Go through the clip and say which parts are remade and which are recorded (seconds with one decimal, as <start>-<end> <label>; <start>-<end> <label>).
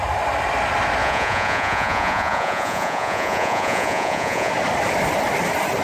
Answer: 0.0-1.0 recorded; 1.0-4.5 remade; 4.5-5.8 recorded